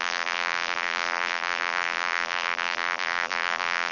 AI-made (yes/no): yes